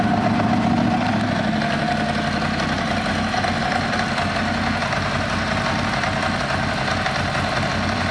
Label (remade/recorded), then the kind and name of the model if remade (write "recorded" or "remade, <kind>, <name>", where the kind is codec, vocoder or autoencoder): recorded